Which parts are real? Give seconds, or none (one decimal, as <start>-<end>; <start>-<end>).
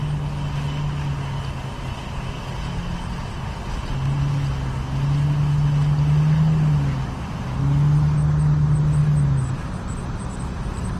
0.0-11.0